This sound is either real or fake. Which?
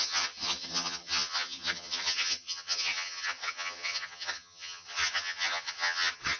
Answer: fake